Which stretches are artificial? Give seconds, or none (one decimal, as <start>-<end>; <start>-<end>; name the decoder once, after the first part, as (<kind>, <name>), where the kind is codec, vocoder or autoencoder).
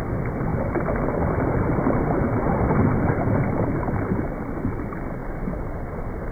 0.0-6.3 (vocoder, BigVGAN v2)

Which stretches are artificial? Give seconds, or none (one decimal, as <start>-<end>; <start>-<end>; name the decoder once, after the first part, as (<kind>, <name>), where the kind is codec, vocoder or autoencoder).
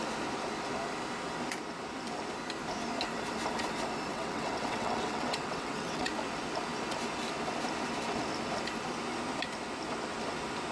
4.1-6.1 (vocoder, WaveNeXt)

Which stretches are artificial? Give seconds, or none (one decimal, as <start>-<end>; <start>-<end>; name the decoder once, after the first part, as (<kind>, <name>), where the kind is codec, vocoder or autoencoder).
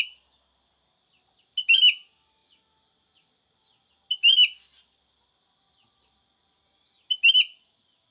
none